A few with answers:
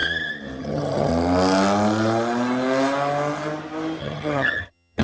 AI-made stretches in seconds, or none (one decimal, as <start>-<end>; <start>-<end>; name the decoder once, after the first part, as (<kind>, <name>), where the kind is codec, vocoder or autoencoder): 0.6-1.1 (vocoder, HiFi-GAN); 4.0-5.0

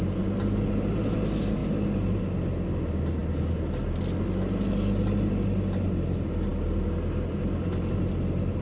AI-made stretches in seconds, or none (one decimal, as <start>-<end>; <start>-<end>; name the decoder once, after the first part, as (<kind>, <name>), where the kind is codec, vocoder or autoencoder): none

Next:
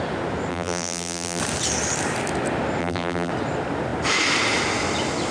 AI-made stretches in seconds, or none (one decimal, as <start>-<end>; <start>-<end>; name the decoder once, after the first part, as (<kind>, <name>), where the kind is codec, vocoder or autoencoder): 0.5-1.4 (vocoder, BigVGAN v2); 2.8-3.3